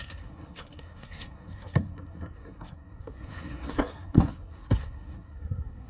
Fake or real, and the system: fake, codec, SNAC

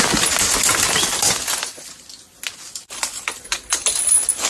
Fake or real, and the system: real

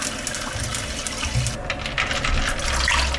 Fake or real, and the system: real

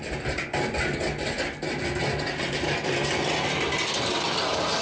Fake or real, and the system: real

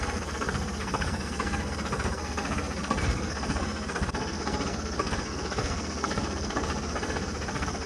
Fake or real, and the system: fake, codec, SNAC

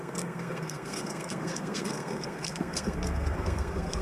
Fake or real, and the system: fake, codec, SNAC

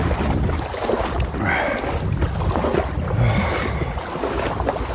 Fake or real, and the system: real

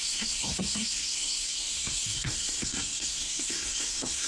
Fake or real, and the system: fake, codec, SNAC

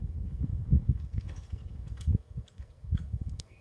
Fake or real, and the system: fake, codec, SNAC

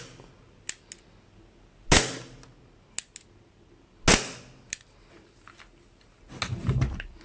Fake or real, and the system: real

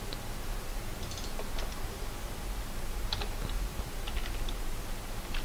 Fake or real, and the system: real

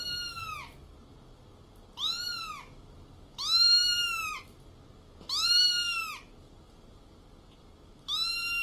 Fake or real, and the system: real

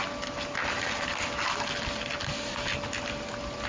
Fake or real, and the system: real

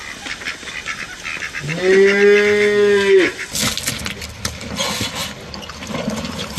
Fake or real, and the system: real